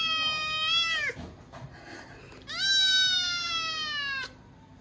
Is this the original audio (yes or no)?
yes